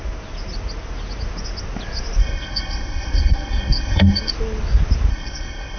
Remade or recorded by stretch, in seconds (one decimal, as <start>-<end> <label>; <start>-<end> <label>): 0.0-2.2 recorded; 2.2-4.3 remade; 4.3-5.1 recorded; 5.1-5.8 remade